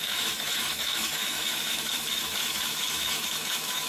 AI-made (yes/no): yes